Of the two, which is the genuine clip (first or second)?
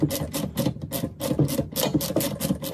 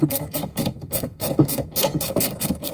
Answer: first